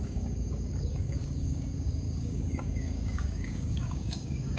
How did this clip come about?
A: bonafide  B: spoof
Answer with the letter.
B